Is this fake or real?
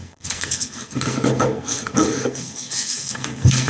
fake